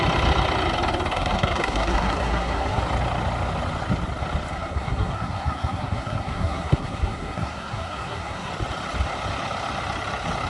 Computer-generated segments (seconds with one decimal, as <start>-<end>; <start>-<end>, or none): 1.1-2.8; 4.5-8.5